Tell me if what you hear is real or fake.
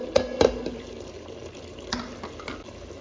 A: real